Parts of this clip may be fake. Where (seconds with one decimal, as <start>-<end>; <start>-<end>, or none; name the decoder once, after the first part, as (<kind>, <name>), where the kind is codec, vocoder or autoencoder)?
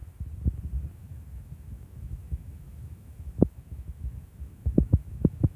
0.9-5.6 (autoencoder, DAC-VAE)